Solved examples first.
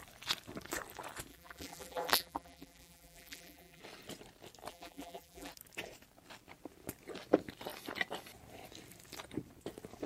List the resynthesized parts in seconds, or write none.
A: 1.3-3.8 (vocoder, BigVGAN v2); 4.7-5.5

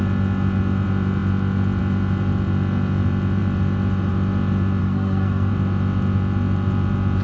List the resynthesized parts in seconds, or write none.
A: 4.8-5.5 (codec, SNAC)

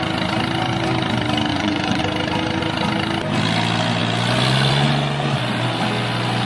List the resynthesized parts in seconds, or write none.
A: 1.5-2.0 (vocoder, Vocos)

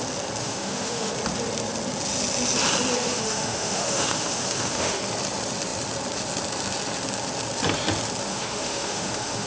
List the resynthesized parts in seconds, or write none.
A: 0.4-1.1 (autoencoder, DAC-VAE); 3.0-5.0; 8.3-9.5

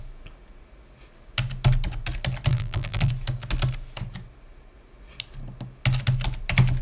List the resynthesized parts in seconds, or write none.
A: 2.5-3.1 (vocoder, BigVGAN v2)

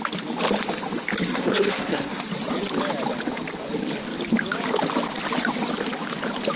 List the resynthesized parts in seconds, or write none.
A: 1.3-2.2 (codec, SNAC)

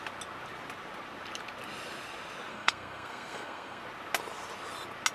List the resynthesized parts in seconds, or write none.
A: 2.5-3.8 (codec, SNAC)